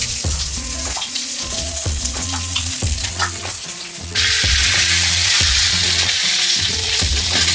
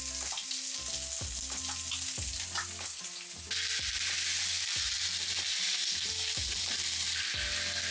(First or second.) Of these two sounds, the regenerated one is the first